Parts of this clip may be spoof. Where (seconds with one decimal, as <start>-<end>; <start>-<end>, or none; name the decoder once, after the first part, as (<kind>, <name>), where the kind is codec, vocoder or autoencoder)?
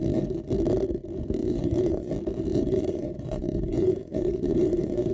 1.4-2.1 (vocoder, Vocos); 2.5-5.1